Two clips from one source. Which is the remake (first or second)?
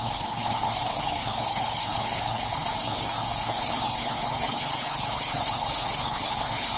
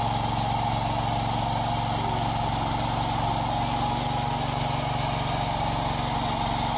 first